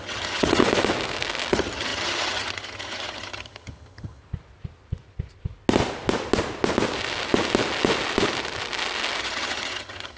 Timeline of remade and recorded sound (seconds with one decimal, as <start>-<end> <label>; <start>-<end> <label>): 0.0-0.6 remade; 0.6-1.5 recorded; 1.5-4.2 remade; 4.2-9.2 recorded; 9.2-10.2 remade